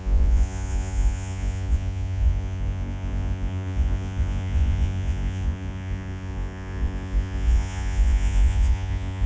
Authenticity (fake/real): fake